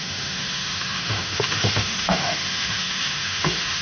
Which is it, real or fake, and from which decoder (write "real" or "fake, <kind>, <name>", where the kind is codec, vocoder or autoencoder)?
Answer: fake, autoencoder, DAC-VAE